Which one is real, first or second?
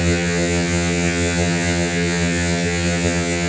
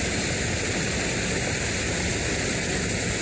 second